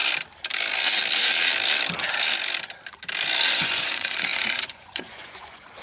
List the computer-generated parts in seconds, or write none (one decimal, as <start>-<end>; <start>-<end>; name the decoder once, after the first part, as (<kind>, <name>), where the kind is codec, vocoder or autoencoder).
3.5-5.8 (vocoder, Vocos)